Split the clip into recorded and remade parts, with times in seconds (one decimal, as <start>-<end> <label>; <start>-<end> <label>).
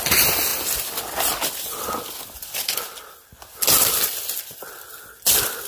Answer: 0.0-5.7 recorded